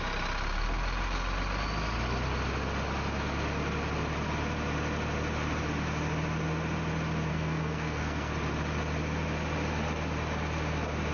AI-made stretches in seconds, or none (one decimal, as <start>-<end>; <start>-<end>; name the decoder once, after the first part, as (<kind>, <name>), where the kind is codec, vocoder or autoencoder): 7.3-8.3 (codec, SNAC)